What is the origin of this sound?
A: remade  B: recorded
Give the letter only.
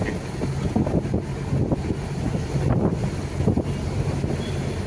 B